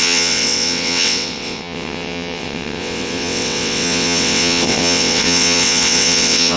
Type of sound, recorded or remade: remade